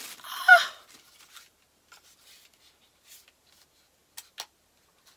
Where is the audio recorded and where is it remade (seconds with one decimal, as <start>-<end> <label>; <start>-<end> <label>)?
0.0-5.2 recorded